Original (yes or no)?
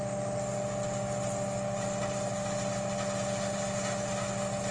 yes